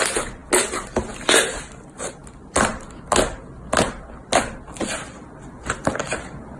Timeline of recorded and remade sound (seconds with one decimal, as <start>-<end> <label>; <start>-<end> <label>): 0.0-6.6 recorded